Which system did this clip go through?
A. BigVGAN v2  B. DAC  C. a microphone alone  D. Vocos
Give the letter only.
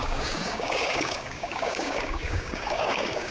B